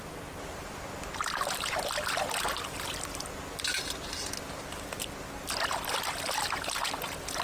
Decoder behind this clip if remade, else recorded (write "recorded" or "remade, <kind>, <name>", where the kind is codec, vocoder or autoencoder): recorded